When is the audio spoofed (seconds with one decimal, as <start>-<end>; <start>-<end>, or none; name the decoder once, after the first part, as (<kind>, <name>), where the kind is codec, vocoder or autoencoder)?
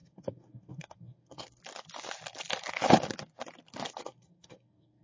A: 0.0-1.6 (codec, SNAC); 4.0-5.0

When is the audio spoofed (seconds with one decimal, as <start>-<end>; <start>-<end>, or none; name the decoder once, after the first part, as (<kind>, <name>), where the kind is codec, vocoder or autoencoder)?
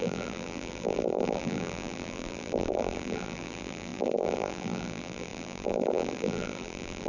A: 0.0-7.1 (vocoder, BigVGAN v2)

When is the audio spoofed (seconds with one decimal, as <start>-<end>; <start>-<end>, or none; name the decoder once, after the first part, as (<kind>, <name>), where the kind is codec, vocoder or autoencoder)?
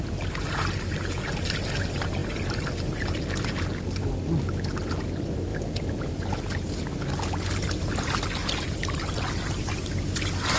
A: 8.4-9.8 (vocoder, BigVGAN v2)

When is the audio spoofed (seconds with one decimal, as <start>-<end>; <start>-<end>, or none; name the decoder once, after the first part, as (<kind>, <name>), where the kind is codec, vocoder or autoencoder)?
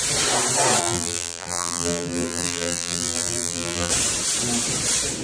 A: 0.8-3.9 (vocoder, BigVGAN v2)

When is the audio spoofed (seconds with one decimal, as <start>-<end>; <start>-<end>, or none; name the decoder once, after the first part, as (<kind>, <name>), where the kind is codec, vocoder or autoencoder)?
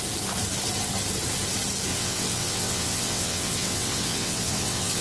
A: 1.9-5.0 (vocoder, WaveNeXt)